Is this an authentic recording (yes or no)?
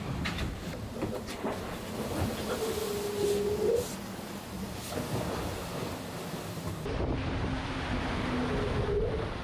yes